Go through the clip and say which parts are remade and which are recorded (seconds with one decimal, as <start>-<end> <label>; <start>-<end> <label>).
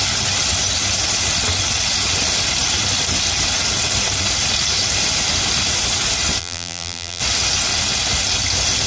0.0-6.4 recorded; 6.4-7.2 remade; 7.2-8.9 recorded